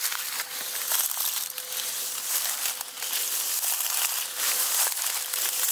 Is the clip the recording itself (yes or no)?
yes